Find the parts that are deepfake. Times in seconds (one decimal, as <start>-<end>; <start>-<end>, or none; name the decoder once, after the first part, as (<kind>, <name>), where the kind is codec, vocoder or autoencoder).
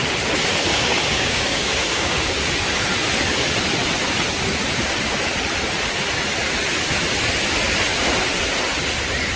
0.7-2.5 (codec, DAC)